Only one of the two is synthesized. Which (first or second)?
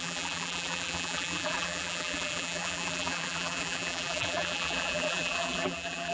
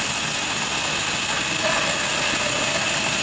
first